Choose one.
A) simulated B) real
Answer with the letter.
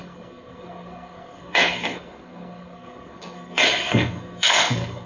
A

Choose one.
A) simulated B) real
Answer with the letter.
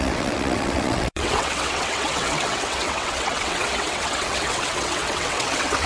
A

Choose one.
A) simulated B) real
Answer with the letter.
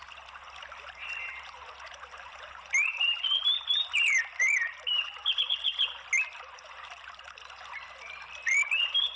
B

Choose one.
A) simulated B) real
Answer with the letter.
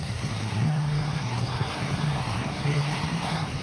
A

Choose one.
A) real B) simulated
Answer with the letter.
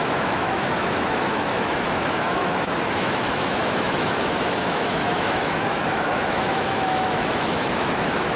B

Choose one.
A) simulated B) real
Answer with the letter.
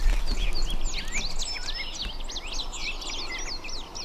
B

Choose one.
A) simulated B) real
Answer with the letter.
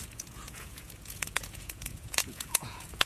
A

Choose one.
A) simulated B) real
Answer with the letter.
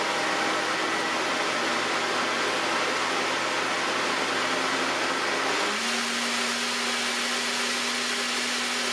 B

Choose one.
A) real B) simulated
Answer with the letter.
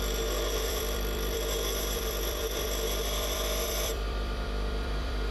B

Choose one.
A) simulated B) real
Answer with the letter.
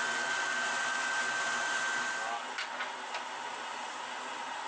B